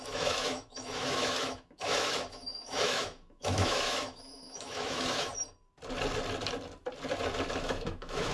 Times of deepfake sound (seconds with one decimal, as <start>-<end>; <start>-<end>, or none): 0.0-5.3; 7.6-8.3